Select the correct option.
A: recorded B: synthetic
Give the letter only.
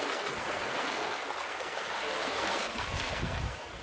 B